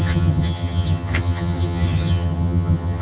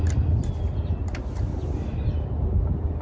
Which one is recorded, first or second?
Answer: second